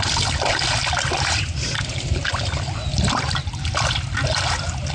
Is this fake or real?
real